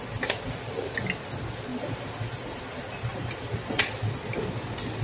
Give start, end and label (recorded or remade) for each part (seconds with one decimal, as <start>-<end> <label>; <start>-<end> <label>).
0.0-1.7 recorded; 1.7-2.3 remade; 2.3-3.1 recorded; 3.1-3.8 remade; 3.8-5.0 recorded